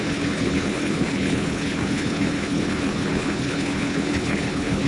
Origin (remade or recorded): remade